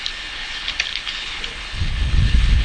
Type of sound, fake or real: fake